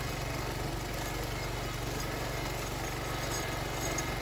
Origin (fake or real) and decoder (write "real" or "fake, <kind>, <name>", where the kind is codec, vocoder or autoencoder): real